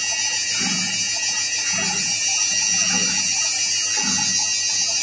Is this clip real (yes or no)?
yes